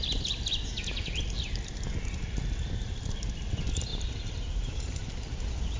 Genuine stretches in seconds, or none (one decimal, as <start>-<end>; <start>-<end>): 0.0-3.9; 5.1-5.8